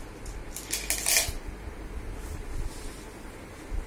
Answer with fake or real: real